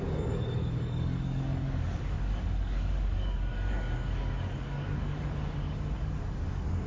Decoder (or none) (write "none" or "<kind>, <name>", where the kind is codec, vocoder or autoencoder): codec, DAC